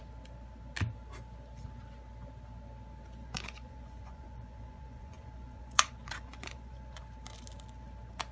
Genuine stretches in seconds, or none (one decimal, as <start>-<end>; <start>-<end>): 0.0-3.2; 7.0-8.3